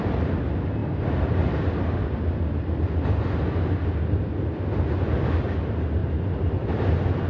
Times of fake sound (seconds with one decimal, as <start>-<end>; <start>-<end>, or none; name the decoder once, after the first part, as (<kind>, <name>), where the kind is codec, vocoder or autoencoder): none

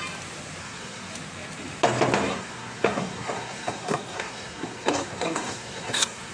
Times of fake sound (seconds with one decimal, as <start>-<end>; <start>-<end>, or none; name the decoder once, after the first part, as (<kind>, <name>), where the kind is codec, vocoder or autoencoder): 0.6-1.1 (codec, SNAC); 2.3-6.3